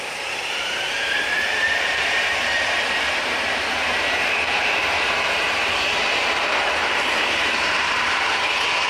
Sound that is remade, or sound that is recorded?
remade